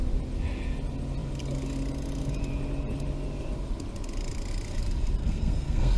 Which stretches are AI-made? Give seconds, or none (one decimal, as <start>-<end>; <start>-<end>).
5.2-6.0